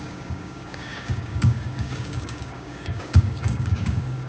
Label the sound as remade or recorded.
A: remade